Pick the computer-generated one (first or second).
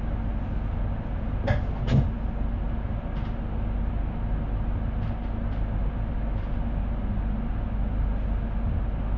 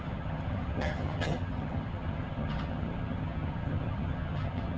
second